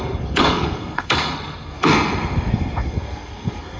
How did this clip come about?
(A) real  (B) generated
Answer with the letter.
B